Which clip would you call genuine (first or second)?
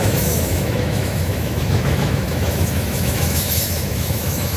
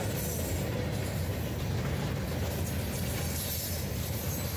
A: second